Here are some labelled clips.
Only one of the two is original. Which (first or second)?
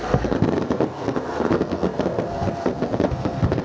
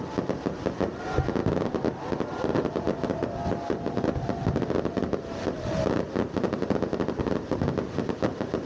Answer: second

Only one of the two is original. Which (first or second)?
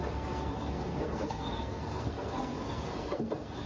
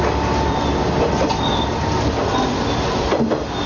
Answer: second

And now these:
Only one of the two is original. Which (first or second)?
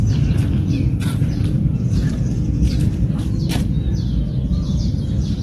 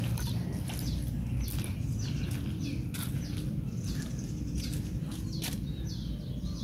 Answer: second